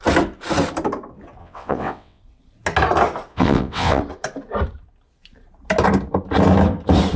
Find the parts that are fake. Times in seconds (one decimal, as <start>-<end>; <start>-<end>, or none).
1.4-2.2; 3.3-4.0